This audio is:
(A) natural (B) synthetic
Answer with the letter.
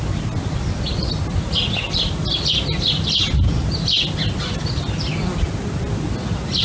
A